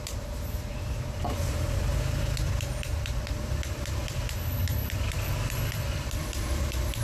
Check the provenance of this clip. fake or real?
fake